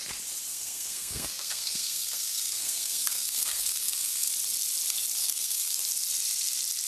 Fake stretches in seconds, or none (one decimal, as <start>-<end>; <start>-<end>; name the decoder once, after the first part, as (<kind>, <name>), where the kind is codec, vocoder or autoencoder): 0.5-4.3 (codec, SNAC); 5.2-5.8